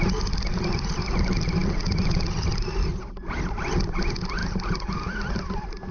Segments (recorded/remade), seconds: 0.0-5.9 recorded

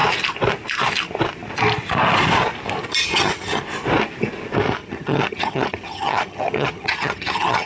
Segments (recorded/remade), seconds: 0.0-3.0 recorded; 3.0-3.6 remade; 3.6-4.8 recorded; 4.8-7.7 remade

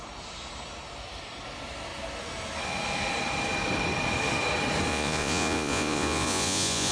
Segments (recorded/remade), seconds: 0.0-4.9 recorded; 4.9-6.9 remade

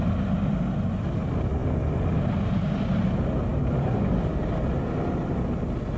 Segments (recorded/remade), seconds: 0.0-3.5 recorded; 3.5-4.4 remade; 4.4-6.0 recorded

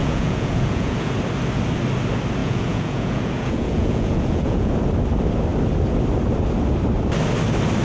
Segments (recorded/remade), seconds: 0.0-1.1 remade; 1.1-2.4 recorded; 2.4-4.7 remade; 4.7-7.8 recorded